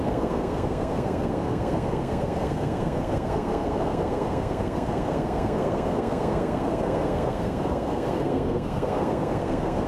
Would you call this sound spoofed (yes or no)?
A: yes